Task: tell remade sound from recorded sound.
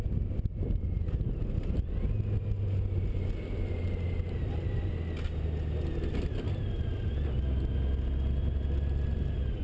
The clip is recorded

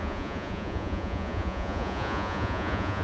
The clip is remade